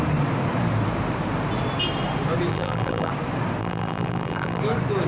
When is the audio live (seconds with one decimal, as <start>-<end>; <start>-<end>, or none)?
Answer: 0.0-2.5; 3.1-3.6; 4.6-5.1